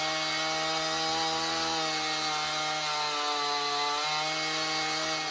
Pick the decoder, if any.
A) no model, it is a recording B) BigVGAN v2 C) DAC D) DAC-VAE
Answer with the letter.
A